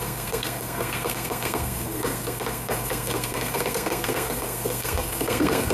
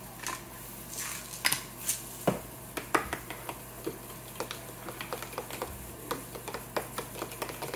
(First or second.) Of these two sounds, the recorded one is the second